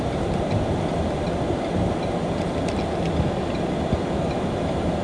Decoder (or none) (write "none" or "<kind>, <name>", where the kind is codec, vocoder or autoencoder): none